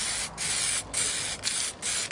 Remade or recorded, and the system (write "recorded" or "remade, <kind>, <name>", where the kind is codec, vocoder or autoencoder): recorded